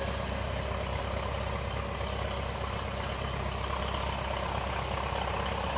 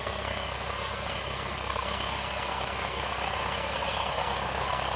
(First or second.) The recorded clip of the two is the first